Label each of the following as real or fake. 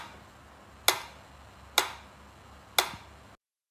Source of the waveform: real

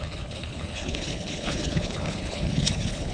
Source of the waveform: fake